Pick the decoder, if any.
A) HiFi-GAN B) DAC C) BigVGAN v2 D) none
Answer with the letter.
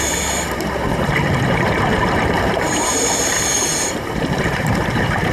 C